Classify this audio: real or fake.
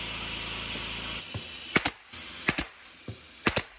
real